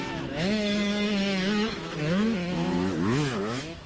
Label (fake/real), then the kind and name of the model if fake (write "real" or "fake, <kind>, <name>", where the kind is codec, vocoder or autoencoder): fake, autoencoder, DAC-VAE